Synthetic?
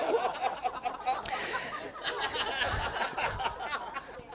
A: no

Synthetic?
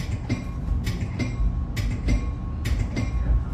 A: no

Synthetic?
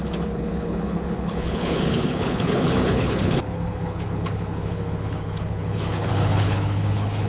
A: yes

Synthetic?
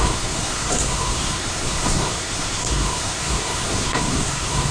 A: yes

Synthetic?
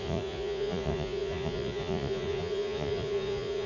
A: yes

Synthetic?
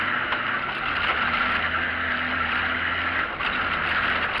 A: no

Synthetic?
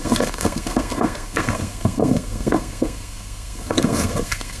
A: yes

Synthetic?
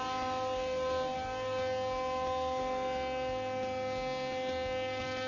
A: no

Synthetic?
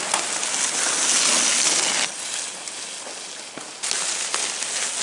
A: no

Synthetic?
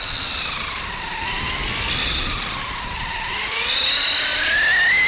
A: no